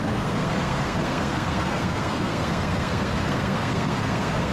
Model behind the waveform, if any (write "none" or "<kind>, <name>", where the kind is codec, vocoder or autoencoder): codec, SNAC